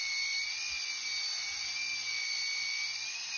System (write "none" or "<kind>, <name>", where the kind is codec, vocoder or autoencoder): none